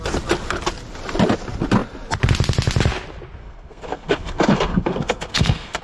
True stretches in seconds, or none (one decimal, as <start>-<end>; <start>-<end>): 0.0-3.4